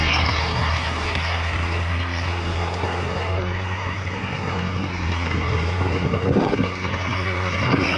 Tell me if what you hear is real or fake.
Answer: fake